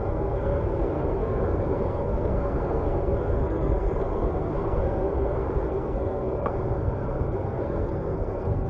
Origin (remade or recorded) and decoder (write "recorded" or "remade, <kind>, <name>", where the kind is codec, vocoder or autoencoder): remade, codec, SNAC